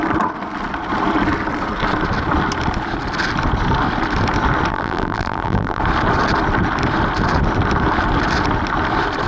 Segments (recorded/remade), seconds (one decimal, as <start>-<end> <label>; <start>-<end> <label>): 0.0-4.7 recorded; 4.7-5.8 remade; 5.8-9.3 recorded